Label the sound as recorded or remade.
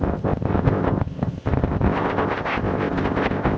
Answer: remade